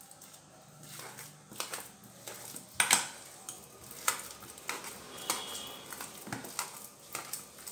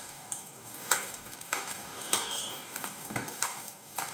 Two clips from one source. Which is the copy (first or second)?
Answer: second